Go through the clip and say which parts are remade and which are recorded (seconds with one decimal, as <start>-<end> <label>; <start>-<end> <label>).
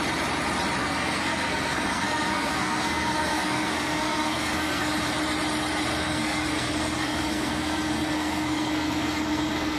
0.0-0.8 recorded; 0.8-4.9 remade; 4.9-6.0 recorded; 6.0-9.8 remade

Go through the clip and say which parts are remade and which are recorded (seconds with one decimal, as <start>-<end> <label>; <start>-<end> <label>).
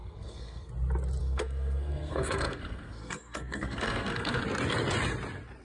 0.0-0.7 remade; 0.7-1.2 recorded; 1.2-4.4 remade; 4.4-5.6 recorded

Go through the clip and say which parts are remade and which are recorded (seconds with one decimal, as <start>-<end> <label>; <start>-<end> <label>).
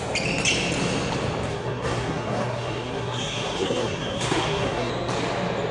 0.0-1.5 recorded; 1.5-4.9 remade; 4.9-5.7 recorded